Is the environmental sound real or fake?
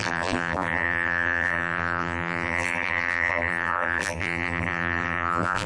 fake